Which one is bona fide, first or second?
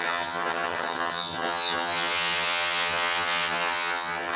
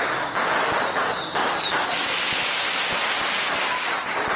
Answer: second